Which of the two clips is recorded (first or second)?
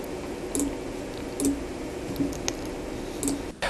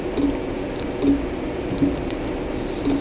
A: first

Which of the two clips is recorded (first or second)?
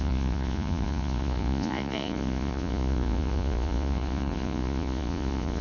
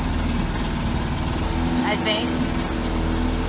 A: second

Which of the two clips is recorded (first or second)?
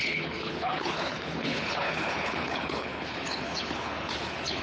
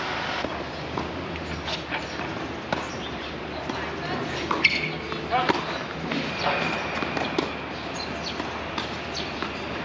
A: second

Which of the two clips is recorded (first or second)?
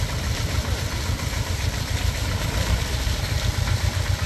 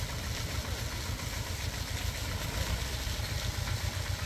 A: second